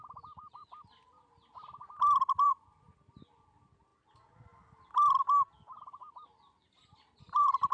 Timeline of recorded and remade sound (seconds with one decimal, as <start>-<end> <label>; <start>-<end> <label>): 0.0-3.9 remade; 3.9-5.2 recorded; 5.2-7.7 remade